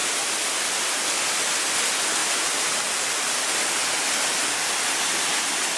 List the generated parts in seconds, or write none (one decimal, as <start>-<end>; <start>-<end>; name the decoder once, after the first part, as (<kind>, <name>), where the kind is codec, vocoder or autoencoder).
0.0-1.7 (vocoder, BigVGAN v2); 2.2-2.7